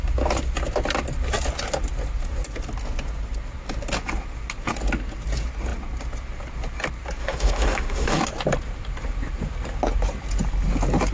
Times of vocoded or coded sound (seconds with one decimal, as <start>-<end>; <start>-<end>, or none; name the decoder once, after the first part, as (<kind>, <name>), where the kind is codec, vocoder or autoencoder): 7.2-8.2 (autoencoder, DAC-VAE)